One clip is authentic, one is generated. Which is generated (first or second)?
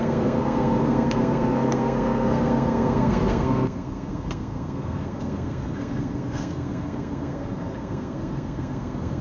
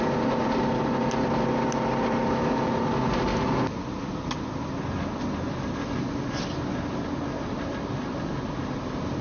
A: first